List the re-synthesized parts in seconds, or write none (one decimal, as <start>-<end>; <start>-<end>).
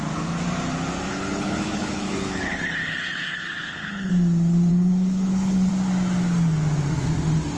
1.1-4.1; 4.7-5.7